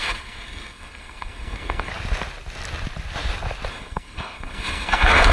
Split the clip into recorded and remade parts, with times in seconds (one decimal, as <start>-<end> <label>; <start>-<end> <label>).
0.0-1.9 remade; 1.9-3.7 recorded; 3.7-5.3 remade